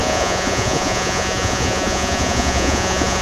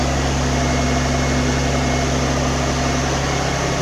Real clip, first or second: second